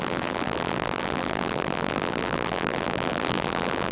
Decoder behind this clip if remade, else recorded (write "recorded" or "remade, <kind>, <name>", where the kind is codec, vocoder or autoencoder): remade, vocoder, BigVGAN v2